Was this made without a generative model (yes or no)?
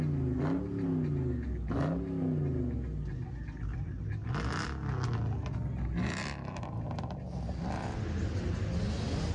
yes